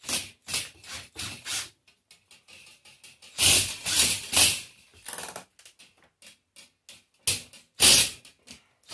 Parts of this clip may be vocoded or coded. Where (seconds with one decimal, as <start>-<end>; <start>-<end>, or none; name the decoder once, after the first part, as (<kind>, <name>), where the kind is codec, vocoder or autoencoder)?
0.4-1.2 (vocoder, BigVGAN v2); 3.8-4.4